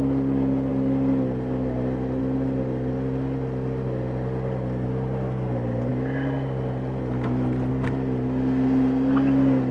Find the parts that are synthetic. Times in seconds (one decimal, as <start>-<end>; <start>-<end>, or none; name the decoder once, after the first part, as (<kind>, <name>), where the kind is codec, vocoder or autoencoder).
none